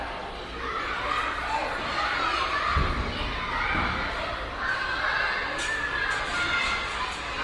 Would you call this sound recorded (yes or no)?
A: yes